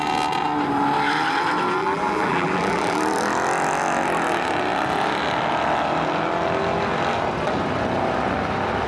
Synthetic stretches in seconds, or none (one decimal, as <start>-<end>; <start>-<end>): 1.8-3.0